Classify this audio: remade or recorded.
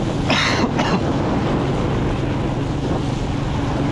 recorded